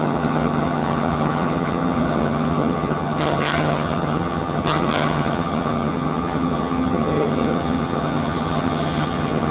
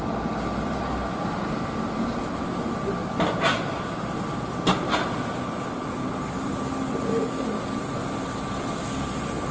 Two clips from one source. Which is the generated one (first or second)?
first